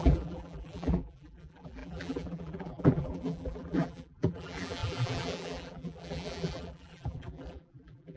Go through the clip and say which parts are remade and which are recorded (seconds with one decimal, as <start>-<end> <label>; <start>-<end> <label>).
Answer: 0.0-8.2 remade